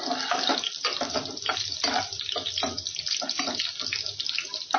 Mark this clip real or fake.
real